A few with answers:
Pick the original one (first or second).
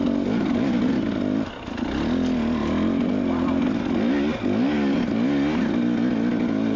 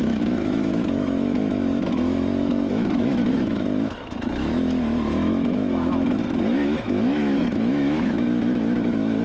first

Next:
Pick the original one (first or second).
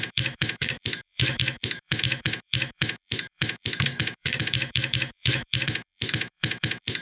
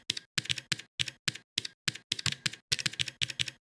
second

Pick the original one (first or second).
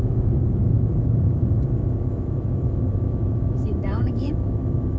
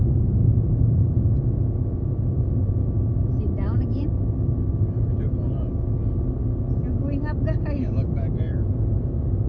second